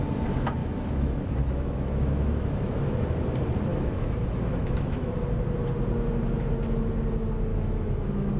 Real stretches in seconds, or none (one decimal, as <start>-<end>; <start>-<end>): 0.0-0.6; 2.8-3.7; 5.1-7.5